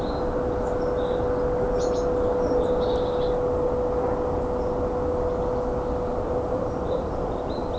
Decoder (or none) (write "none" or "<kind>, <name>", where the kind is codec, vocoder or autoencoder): none